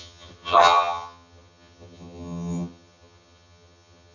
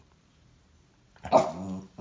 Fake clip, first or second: first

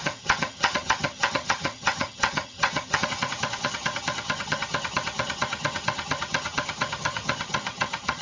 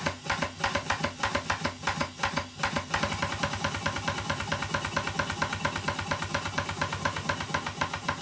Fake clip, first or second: first